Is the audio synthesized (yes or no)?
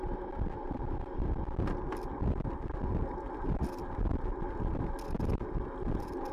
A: no